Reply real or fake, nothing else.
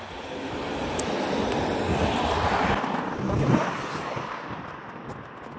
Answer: real